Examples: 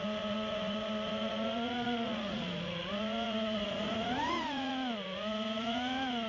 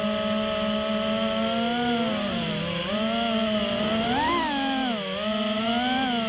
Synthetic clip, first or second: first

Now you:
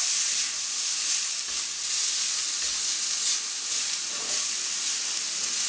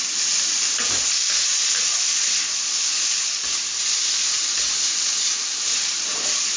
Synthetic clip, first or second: second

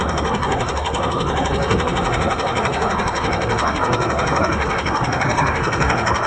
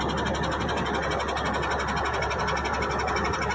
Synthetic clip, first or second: first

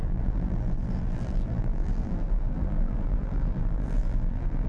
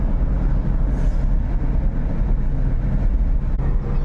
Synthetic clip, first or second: first